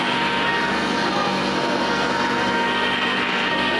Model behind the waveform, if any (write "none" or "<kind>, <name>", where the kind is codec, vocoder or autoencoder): codec, SNAC